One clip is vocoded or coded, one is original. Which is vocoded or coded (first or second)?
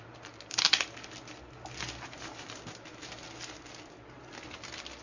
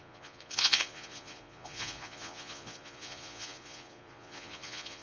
second